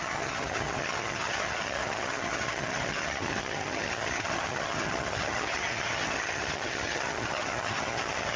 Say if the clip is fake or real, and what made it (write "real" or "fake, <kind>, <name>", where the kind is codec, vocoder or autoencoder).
fake, vocoder, HiFi-GAN